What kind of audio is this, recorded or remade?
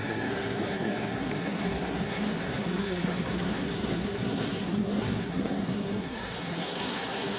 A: remade